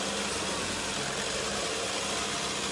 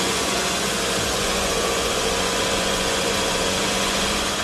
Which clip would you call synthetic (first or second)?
second